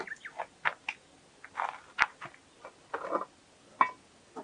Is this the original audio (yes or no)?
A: yes